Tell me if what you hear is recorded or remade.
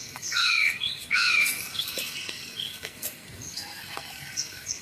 remade